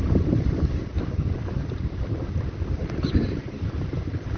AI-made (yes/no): no